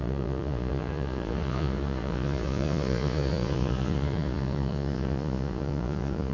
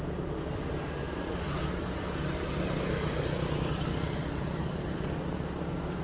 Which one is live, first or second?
second